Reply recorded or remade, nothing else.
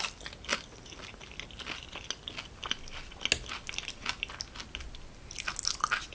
recorded